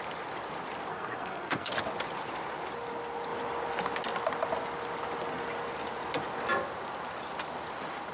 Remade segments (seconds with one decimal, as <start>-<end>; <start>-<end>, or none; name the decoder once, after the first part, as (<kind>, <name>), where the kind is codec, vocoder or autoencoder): 0.9-1.7 (codec, SNAC)